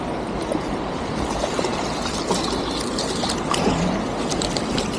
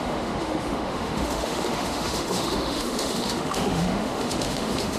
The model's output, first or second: second